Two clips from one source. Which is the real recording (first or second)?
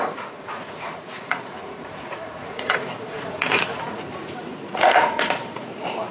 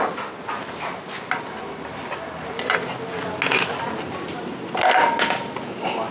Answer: second